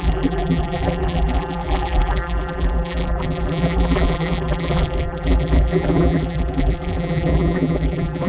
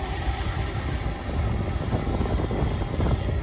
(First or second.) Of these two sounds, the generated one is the first